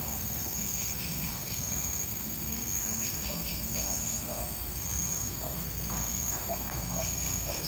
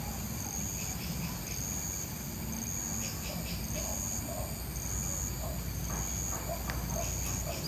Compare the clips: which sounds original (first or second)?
second